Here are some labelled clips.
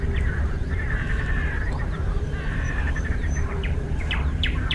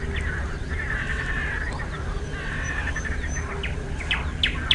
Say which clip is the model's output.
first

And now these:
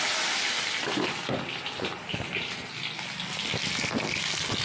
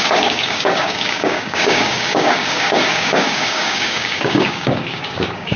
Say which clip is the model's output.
second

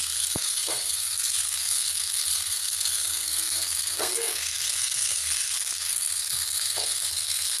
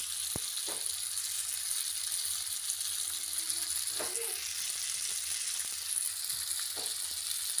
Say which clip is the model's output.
first